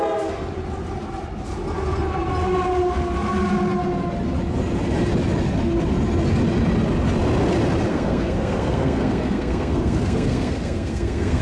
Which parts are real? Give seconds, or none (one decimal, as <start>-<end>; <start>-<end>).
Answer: 0.0-7.9